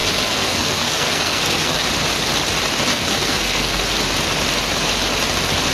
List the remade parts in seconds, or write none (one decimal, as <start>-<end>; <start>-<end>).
0.0-1.9; 2.9-3.8